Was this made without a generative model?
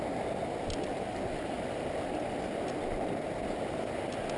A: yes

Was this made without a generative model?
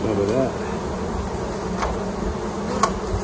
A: yes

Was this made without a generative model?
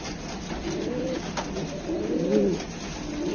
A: yes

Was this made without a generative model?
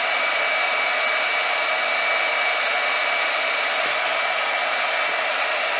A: yes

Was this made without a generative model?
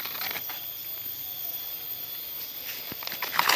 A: yes